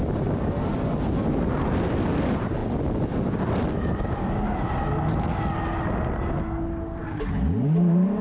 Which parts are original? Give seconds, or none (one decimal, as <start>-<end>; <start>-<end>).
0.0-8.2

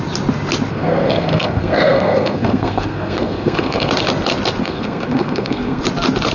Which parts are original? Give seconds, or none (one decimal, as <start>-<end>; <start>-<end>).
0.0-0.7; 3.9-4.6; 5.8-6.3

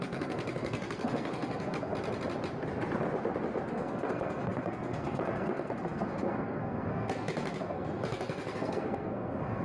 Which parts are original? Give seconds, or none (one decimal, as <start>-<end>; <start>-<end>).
1.9-3.7